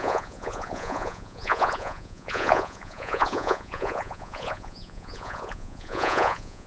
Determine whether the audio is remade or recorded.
remade